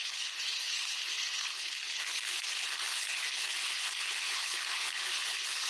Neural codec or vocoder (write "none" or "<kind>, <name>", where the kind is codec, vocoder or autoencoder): codec, HILCodec